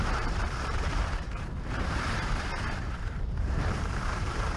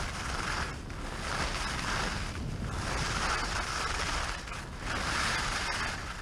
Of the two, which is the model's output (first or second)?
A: first